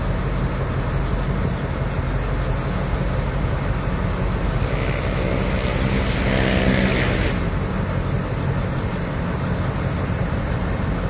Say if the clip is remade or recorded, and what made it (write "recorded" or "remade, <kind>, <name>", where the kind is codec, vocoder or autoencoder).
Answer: recorded